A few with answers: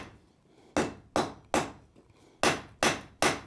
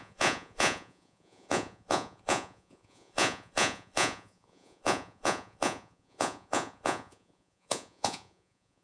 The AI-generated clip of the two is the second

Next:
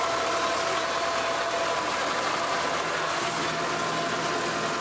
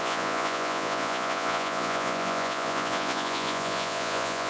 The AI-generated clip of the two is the second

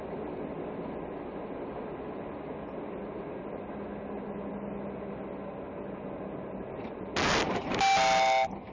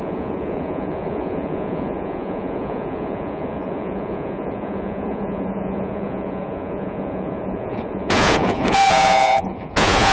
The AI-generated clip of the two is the second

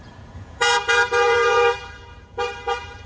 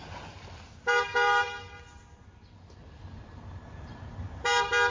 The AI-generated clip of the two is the first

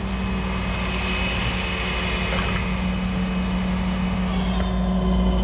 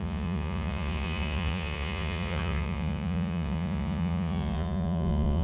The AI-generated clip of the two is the second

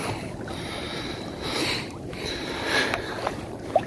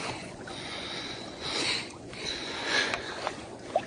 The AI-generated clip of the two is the second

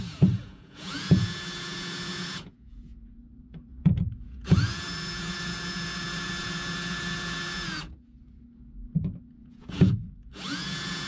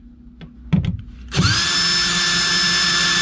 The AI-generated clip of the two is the first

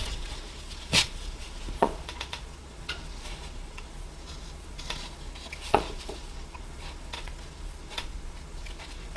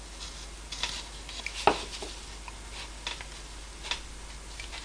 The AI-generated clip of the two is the first